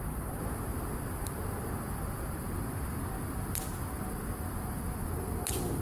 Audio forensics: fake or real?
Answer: real